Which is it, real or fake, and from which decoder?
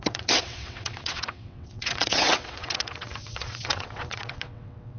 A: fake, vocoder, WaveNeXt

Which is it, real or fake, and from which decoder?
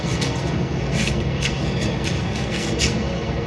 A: fake, codec, SNAC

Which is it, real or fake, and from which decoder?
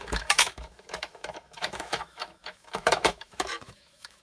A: fake, autoencoder, DAC-VAE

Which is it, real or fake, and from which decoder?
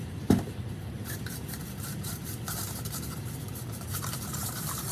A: fake, vocoder, BigVGAN v2